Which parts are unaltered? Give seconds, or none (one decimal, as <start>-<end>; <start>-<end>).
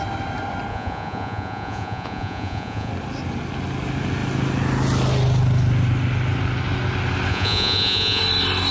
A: 0.0-0.7; 2.9-7.3; 8.2-8.7